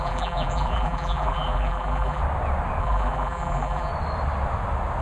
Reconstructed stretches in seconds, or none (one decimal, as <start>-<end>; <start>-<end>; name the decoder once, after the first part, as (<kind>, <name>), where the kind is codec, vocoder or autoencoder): 0.0-2.2 (vocoder, BigVGAN v2); 2.8-3.9